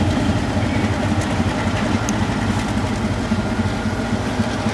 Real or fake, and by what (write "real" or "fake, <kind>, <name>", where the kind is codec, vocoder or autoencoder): real